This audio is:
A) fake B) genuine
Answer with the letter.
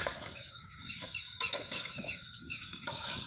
A